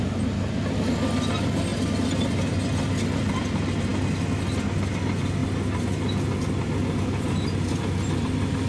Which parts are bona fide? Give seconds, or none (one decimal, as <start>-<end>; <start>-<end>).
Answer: 0.0-8.7